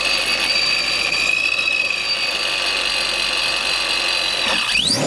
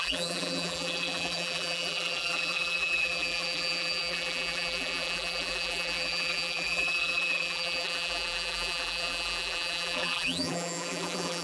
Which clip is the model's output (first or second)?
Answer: second